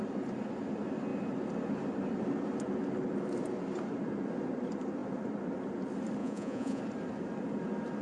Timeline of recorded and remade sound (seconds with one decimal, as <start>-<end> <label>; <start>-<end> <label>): 0.0-6.2 recorded; 6.2-6.8 remade; 6.8-8.0 recorded